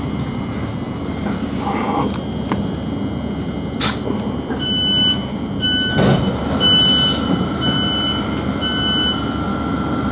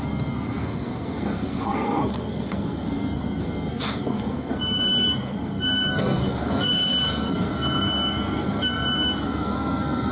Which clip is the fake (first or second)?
second